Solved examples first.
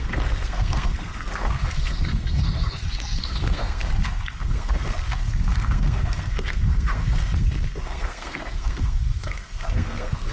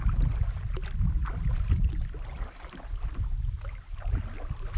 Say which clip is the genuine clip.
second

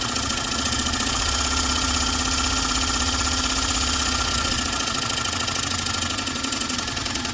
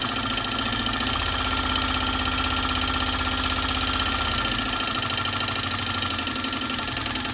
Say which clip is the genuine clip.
second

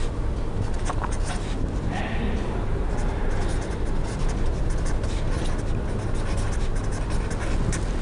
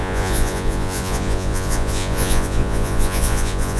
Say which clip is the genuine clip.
first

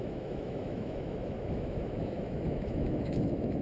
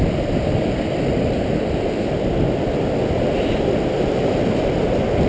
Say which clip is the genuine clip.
second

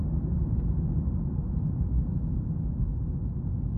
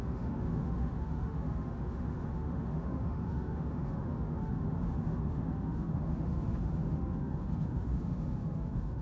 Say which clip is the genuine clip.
first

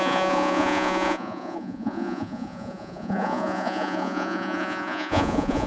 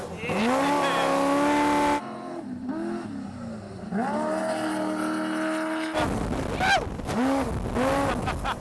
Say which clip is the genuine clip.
second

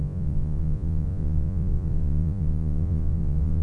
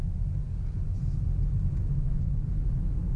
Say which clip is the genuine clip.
second